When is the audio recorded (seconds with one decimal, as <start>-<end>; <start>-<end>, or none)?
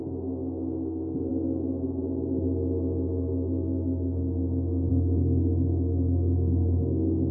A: 0.0-7.3